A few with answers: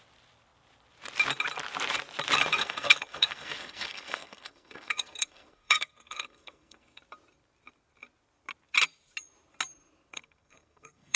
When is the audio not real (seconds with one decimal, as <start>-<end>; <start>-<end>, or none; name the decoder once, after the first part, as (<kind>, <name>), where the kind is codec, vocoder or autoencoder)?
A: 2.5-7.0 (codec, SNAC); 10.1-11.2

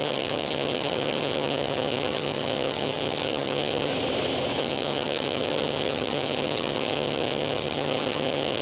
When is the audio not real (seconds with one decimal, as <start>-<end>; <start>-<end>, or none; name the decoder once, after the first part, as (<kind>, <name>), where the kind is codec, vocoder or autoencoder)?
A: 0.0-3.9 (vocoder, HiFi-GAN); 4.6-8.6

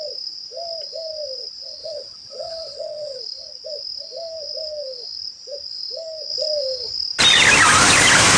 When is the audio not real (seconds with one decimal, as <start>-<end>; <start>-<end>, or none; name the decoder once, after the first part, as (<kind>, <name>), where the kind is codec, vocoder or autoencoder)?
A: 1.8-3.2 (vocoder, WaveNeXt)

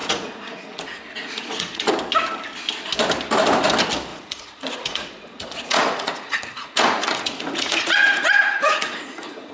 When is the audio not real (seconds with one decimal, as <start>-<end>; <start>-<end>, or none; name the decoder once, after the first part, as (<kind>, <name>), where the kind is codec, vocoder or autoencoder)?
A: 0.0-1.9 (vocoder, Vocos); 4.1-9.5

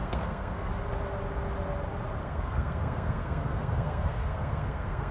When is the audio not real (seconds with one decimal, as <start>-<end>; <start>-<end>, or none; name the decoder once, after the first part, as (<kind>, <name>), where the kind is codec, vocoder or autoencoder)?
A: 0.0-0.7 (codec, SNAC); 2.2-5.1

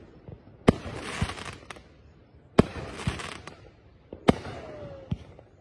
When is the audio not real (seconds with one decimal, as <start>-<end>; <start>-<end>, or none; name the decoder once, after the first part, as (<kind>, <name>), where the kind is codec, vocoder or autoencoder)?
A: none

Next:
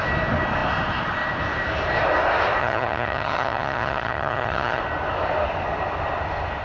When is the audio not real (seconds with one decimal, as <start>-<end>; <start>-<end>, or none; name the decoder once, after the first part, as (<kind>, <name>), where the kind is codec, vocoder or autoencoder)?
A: 2.6-4.8 (vocoder, HiFi-GAN)

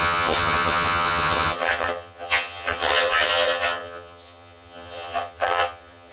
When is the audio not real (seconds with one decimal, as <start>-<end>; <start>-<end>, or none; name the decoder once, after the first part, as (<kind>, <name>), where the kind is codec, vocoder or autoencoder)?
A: 0.0-6.1 (vocoder, HiFi-GAN)